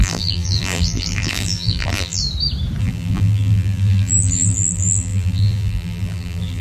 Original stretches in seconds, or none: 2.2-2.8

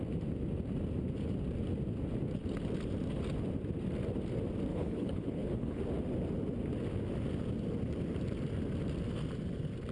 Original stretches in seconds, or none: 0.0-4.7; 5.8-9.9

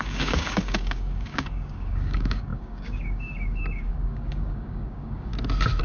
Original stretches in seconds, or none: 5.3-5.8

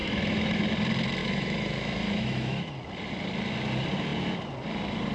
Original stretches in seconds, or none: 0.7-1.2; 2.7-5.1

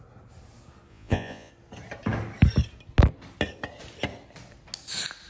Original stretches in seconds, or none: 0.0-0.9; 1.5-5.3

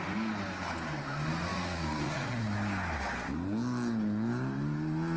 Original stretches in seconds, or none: 0.0-1.5; 2.4-5.2